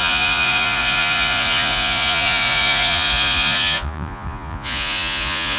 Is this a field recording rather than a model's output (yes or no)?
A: no